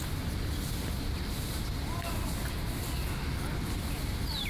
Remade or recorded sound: recorded